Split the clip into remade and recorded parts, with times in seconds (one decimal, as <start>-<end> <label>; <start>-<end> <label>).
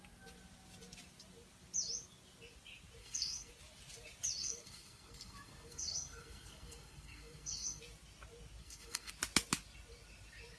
0.0-3.0 recorded; 3.0-3.5 remade; 3.5-4.4 recorded; 4.4-7.8 remade; 7.8-8.6 recorded; 8.6-9.1 remade; 9.1-10.6 recorded